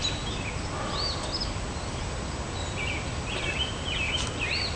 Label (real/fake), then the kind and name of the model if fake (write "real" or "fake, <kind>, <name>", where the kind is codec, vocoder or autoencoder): real